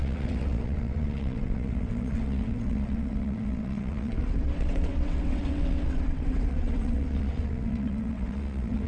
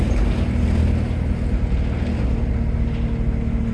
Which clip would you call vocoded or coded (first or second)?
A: first